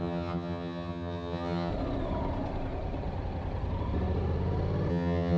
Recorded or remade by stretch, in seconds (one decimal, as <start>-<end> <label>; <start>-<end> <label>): 0.0-1.7 remade; 1.7-4.9 recorded; 4.9-5.4 remade